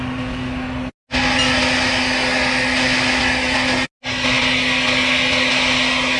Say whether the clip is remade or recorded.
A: recorded